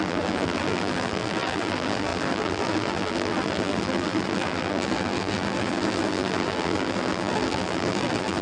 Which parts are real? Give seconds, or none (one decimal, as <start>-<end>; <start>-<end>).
none